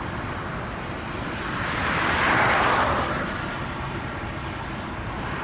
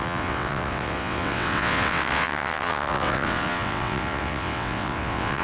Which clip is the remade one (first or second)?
second